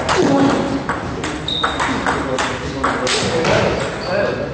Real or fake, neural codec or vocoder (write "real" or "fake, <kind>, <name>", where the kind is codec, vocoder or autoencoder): real